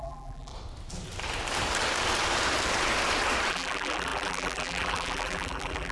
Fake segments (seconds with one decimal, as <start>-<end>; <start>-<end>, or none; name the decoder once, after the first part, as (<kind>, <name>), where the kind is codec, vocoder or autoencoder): 0.0-0.5 (vocoder, BigVGAN v2); 3.5-5.9